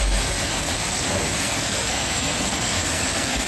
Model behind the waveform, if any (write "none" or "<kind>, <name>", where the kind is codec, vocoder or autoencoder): codec, SNAC